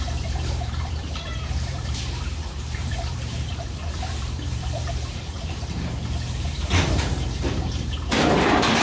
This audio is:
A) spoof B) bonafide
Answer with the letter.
A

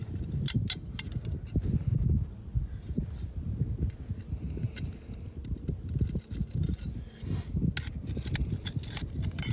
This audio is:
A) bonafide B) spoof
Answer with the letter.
A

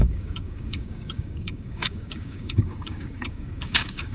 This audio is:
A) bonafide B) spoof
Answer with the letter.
B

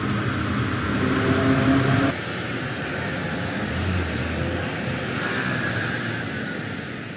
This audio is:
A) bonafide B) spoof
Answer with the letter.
A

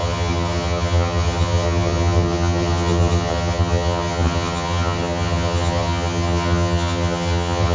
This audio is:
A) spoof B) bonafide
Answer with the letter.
A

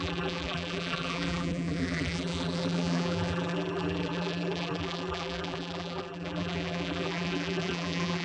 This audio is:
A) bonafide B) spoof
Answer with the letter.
B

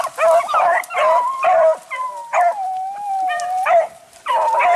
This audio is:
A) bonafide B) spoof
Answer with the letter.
A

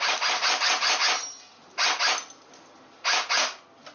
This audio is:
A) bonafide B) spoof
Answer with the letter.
A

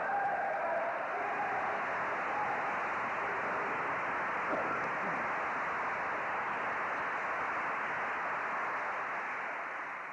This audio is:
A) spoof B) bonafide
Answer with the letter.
B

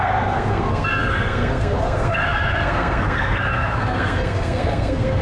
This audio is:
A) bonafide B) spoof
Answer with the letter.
B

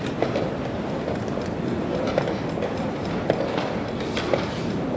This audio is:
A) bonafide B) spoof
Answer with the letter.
A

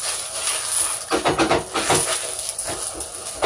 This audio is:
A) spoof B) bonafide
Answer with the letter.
B